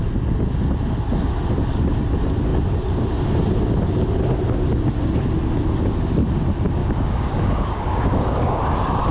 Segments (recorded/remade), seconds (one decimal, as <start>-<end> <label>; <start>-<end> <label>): 0.0-6.8 recorded; 6.8-8.6 remade; 8.6-9.1 recorded